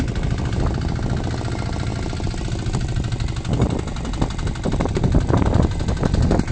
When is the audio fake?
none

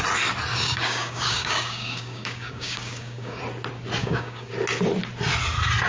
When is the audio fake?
0.5-3.4; 4.0-4.5